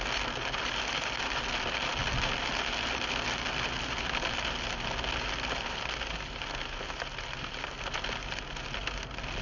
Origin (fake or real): real